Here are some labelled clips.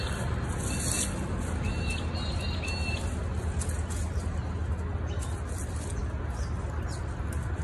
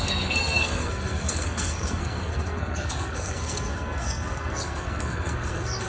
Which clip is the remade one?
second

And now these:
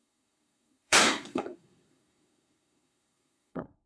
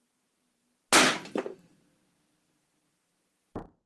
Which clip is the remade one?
first